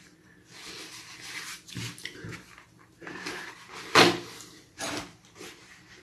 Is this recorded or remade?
recorded